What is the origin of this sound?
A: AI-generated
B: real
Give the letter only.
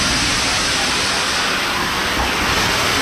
B